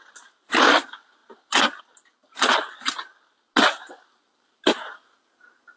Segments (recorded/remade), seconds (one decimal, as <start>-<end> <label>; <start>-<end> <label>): 0.0-5.8 recorded